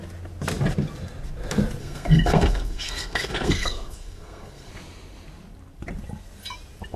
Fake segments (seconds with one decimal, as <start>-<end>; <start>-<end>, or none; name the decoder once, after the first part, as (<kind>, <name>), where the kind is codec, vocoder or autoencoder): 1.8-4.7 (codec, SNAC)